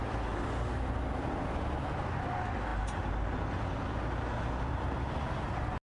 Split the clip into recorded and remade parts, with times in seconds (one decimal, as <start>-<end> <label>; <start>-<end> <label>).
0.0-5.8 recorded